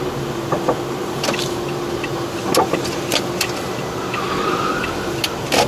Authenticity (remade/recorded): recorded